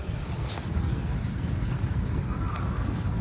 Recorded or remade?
remade